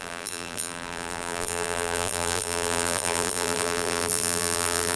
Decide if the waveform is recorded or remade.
remade